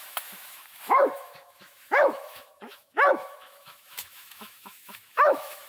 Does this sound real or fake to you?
fake